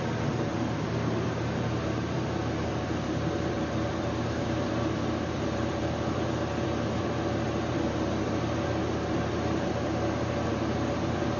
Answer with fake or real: fake